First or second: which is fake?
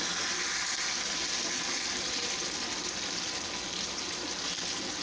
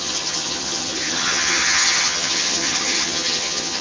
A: second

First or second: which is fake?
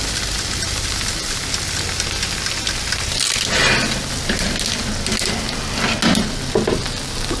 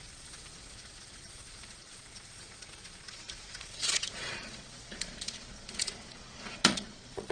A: second